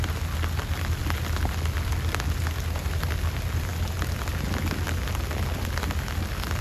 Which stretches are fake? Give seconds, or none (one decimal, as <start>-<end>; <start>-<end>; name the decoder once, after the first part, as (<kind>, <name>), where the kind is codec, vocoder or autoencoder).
none